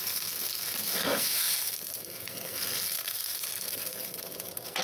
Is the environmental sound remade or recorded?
remade